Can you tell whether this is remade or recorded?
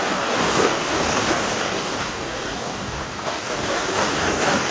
remade